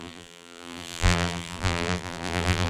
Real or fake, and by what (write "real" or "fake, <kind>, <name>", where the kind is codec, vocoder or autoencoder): fake, vocoder, BigVGAN v2